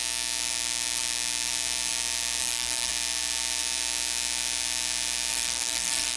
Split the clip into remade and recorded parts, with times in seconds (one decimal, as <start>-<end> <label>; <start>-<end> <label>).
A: 0.0-2.4 recorded; 2.4-2.9 remade; 2.9-5.3 recorded; 5.3-6.2 remade